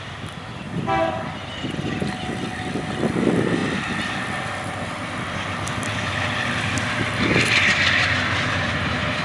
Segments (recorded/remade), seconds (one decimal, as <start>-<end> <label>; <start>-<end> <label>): 0.0-9.2 recorded